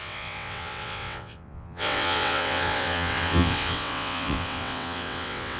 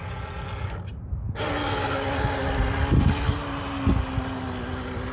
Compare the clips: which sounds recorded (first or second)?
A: second